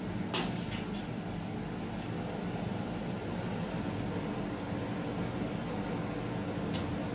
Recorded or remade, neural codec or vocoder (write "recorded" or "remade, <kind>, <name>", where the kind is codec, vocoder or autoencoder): recorded